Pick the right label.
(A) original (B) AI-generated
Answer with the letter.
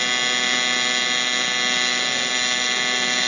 A